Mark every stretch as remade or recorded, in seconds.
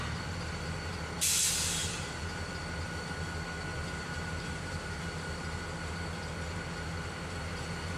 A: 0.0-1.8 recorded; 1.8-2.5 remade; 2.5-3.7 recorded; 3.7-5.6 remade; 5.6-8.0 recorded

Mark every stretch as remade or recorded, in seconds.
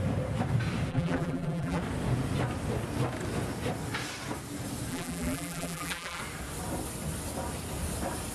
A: 0.0-0.9 recorded; 0.9-1.8 remade; 1.8-4.9 recorded; 4.9-6.2 remade; 6.2-8.3 recorded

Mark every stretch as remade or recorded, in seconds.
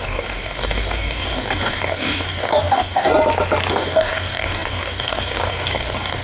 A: 0.0-3.1 remade; 3.1-3.7 recorded; 3.7-6.2 remade